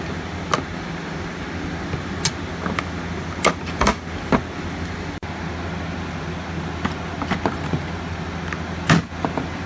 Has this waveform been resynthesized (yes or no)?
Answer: no